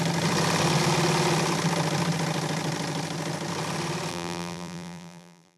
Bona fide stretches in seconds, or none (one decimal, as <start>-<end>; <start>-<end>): 0.0-4.1